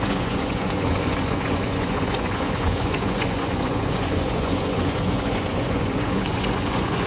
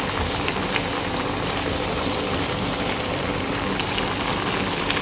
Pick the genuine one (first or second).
second